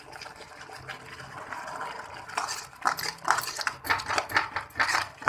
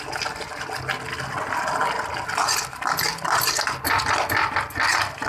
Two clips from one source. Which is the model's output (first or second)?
first